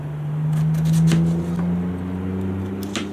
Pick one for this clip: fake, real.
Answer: real